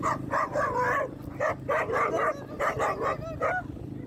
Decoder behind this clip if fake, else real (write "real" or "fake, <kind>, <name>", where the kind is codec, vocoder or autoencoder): real